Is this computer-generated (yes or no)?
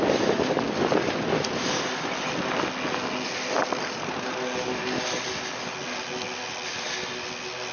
no